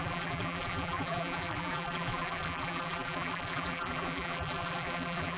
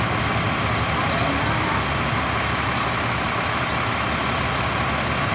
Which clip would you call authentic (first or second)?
second